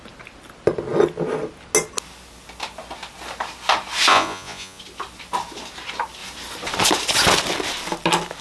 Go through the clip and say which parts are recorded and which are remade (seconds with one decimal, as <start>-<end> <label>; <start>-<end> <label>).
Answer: 0.0-4.1 recorded; 4.1-4.8 remade; 4.8-8.4 recorded